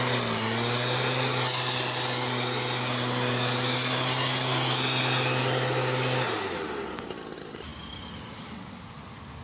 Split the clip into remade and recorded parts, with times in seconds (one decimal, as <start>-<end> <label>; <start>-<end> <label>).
0.0-9.4 recorded